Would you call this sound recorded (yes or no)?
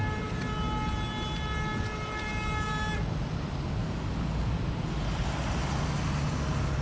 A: yes